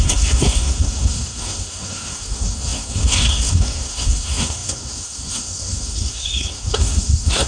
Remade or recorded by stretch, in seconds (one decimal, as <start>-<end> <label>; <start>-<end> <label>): 0.0-7.5 remade

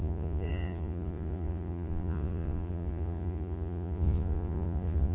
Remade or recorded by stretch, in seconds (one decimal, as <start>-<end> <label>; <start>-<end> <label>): 0.0-5.1 remade